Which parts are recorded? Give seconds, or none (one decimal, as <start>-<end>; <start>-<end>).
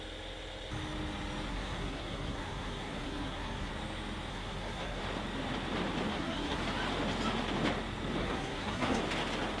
0.0-1.5; 3.7-4.3; 5.0-6.1; 6.6-8.2; 9.0-9.6